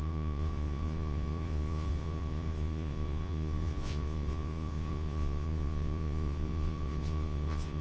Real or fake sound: fake